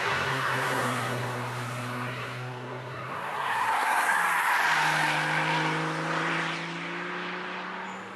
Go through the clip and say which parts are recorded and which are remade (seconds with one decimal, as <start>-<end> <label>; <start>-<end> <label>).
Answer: 0.0-4.2 remade; 4.2-8.2 recorded